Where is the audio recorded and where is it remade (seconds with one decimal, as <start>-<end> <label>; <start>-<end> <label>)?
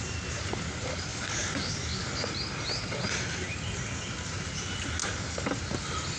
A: 0.0-1.1 recorded; 1.1-2.3 remade; 2.3-5.0 recorded; 5.0-5.6 remade; 5.6-6.2 recorded